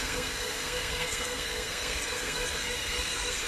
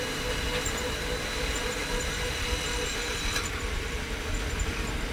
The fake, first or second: first